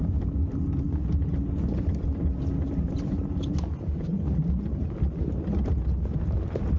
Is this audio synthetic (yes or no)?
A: no